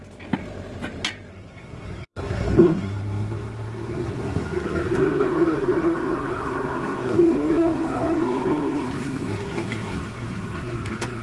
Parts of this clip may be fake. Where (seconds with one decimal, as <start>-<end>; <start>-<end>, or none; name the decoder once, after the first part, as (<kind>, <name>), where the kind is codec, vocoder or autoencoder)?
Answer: 1.3-11.2 (codec, SNAC)